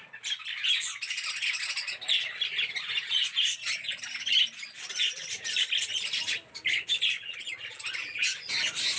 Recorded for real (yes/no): yes